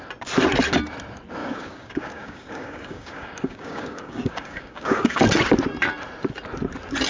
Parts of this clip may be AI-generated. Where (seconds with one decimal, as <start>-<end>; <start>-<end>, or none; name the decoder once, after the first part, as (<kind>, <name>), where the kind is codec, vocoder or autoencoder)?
1.4-5.2 (codec, DAC)